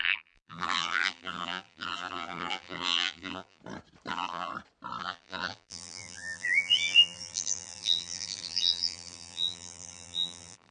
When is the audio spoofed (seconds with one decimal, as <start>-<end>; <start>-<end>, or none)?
0.0-3.6; 4.1-4.5; 5.0-10.7